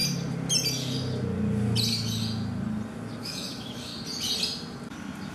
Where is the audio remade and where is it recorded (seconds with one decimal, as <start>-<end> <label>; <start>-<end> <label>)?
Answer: 0.0-3.2 recorded; 3.2-3.9 remade; 3.9-5.3 recorded